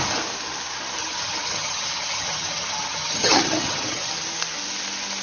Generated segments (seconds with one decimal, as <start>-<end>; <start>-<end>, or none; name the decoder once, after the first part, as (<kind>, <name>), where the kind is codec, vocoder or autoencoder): 1.0-4.1 (vocoder, HiFi-GAN)